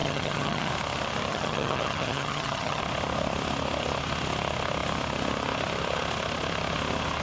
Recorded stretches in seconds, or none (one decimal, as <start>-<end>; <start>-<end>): 0.7-1.3; 2.8-7.2